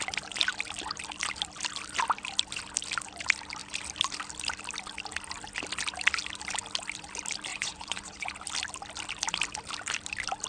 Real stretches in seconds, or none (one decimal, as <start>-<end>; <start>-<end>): 0.0-7.5; 8.3-10.5